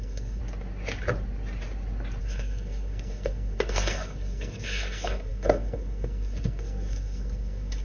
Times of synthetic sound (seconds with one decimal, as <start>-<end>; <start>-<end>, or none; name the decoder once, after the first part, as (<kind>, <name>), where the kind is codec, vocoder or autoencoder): 0.0-0.4 (codec, SNAC); 2.2-7.8